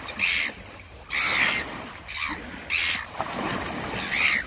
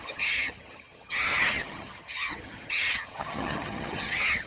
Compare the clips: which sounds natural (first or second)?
first